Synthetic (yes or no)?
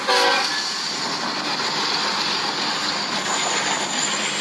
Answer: no